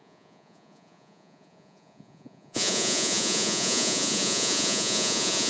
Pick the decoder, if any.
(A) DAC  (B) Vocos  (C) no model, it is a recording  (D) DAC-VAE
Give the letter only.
B